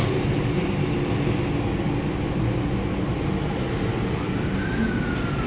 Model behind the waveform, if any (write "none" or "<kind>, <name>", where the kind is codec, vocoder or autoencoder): none